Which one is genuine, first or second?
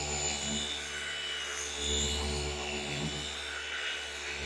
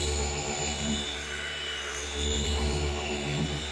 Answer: first